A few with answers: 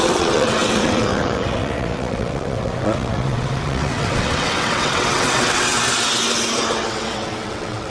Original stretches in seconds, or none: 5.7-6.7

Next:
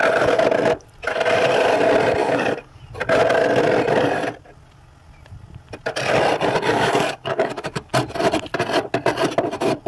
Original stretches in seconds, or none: 0.0-2.2; 2.8-6.7; 7.9-9.9

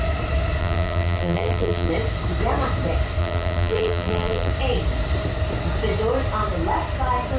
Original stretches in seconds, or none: 0.0-0.6; 1.9-3.2; 4.5-7.4

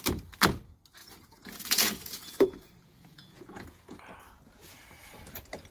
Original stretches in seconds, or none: 0.0-1.0; 4.0-5.7

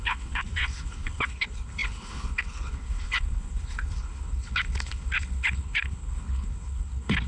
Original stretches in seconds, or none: none